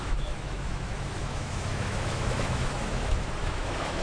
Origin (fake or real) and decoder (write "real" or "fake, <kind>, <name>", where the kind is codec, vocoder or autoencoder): fake, autoencoder, DAC-VAE